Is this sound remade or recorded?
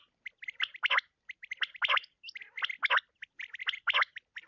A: recorded